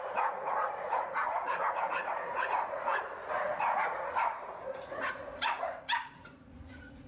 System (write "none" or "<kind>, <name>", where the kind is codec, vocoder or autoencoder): vocoder, Vocos